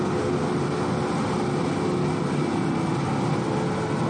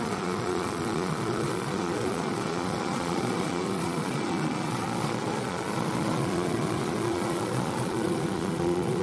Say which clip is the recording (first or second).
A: first